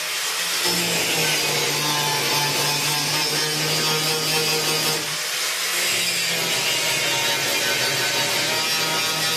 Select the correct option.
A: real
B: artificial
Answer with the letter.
A